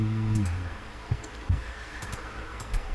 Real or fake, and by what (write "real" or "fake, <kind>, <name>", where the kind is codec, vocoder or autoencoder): fake, codec, SNAC